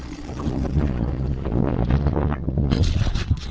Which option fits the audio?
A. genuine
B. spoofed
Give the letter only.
B